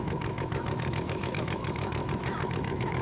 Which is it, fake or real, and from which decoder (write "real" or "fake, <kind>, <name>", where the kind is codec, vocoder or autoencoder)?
fake, autoencoder, DAC-VAE